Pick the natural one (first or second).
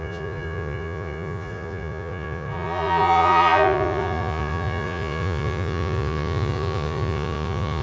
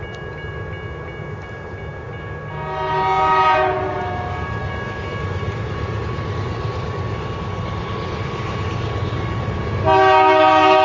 second